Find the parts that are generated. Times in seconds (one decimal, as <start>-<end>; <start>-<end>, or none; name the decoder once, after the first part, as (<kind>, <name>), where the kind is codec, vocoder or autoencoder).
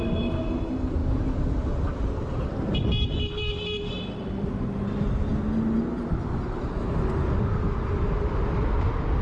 none